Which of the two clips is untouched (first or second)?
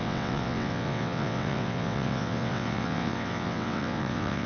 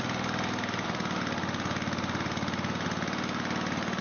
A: second